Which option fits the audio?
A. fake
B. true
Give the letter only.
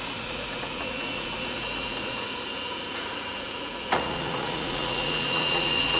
A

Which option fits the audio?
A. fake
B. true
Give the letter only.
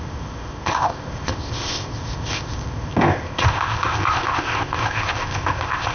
A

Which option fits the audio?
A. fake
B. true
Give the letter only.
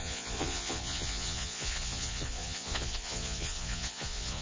A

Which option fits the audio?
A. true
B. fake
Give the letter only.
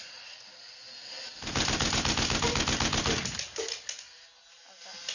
A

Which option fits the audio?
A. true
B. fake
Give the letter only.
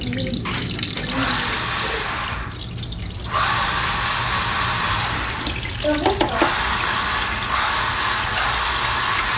A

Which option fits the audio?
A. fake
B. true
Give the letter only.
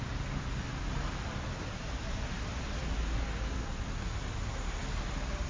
B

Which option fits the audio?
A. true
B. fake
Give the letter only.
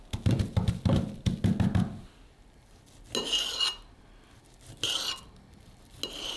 A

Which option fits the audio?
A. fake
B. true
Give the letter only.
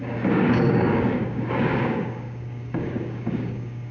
A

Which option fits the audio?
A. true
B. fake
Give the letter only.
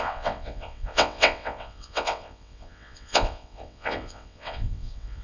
B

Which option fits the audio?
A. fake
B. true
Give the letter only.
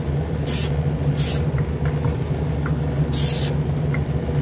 B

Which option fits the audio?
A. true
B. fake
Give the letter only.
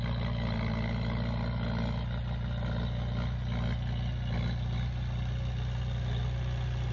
A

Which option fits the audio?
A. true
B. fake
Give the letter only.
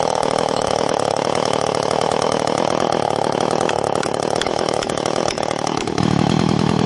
B